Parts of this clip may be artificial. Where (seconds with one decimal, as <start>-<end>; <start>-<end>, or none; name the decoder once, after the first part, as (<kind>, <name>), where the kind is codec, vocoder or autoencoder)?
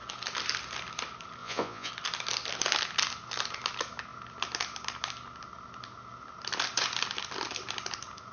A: 1.4-1.9 (vocoder, Vocos)